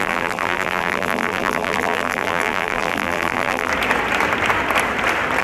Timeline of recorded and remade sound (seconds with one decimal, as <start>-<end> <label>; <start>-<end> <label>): 0.0-3.7 remade; 3.7-5.4 recorded